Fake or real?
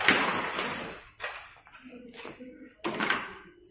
real